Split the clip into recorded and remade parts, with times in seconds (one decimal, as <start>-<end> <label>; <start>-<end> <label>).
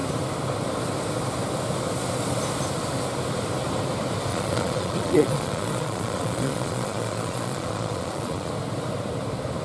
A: 0.0-4.3 recorded; 4.3-8.5 remade; 8.5-9.6 recorded